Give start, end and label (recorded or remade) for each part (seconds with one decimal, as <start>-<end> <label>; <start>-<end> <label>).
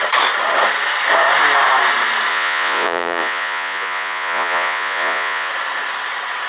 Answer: 0.0-2.3 recorded; 2.3-5.5 remade; 5.5-6.5 recorded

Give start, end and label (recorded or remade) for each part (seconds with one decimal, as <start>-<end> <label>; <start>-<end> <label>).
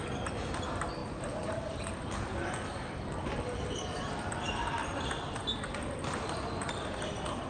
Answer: 0.0-1.0 recorded; 1.0-1.9 remade; 1.9-7.5 recorded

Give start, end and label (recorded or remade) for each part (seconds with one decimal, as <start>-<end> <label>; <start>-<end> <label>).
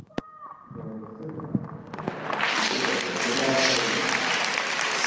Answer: 0.0-3.4 recorded; 3.4-3.9 remade; 3.9-5.1 recorded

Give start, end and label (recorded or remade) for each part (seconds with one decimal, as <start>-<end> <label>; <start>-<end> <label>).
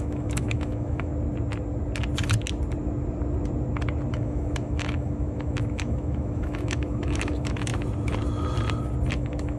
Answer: 0.0-1.1 remade; 1.1-4.1 recorded; 4.1-7.7 remade; 7.7-9.1 recorded; 9.1-9.6 remade